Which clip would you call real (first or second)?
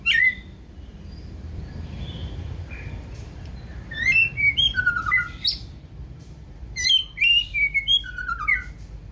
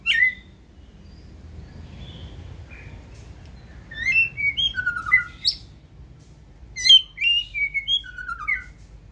second